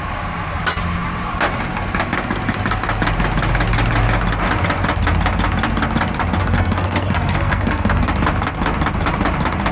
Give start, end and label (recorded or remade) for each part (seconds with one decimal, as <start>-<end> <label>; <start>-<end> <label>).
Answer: 0.0-6.4 recorded; 6.4-8.0 remade; 8.0-9.7 recorded